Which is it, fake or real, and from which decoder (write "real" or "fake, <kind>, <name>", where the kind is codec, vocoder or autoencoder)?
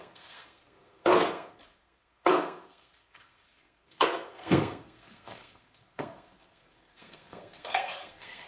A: fake, codec, SNAC